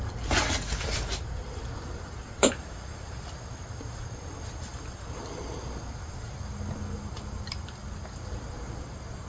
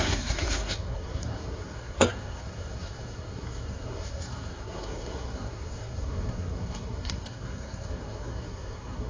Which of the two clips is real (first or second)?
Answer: first